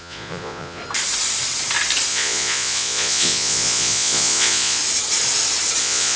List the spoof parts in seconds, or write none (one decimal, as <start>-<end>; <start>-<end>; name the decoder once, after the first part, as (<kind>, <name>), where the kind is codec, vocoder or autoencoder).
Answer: 0.0-0.8 (vocoder, Vocos); 2.1-4.8; 5.8-6.2

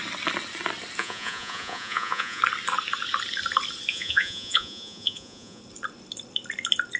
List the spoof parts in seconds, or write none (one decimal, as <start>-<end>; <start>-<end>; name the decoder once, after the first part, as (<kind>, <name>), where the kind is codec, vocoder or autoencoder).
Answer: 1.0-2.4 (vocoder, Vocos); 3.9-5.6

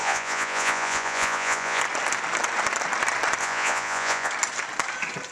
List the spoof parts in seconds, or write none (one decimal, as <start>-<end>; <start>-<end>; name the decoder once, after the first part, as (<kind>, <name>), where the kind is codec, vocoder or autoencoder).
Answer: 0.0-1.8 (vocoder, Vocos); 3.4-4.3

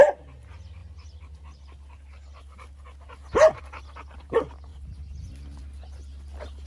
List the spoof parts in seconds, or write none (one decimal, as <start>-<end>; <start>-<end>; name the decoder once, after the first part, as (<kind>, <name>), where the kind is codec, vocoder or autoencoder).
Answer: none

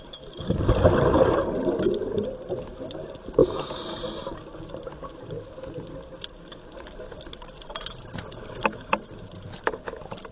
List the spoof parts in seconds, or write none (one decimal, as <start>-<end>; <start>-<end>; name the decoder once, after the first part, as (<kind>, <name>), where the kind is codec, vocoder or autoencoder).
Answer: none

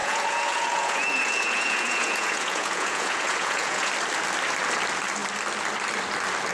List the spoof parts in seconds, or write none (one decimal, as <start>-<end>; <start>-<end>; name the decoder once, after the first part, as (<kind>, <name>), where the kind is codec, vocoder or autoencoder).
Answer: 0.0-3.9 (vocoder, Vocos)

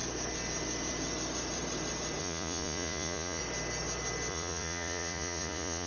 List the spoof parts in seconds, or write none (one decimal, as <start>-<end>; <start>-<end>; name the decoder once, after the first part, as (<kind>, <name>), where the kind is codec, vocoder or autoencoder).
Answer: 2.2-3.4 (vocoder, Vocos); 4.3-5.9

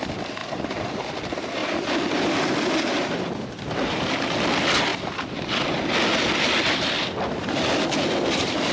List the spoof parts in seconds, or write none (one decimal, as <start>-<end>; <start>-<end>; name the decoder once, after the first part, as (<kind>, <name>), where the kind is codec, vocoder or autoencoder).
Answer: none